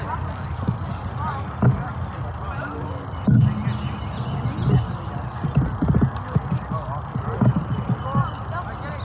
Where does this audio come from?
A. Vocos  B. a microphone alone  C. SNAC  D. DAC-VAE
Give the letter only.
B